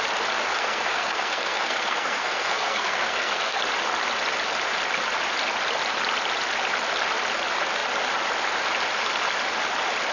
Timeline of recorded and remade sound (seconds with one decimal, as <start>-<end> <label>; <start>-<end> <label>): 0.0-0.5 recorded; 0.5-3.6 remade; 3.6-10.1 recorded